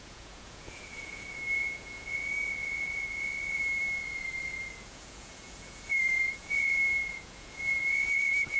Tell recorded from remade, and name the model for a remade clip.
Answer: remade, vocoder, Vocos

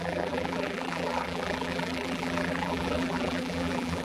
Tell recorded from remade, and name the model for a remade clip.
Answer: remade, vocoder, BigVGAN v2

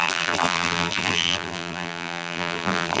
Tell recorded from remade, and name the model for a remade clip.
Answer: remade, vocoder, BigVGAN v2